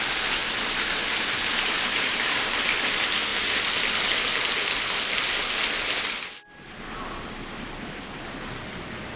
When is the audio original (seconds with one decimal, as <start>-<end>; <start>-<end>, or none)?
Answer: 0.0-9.2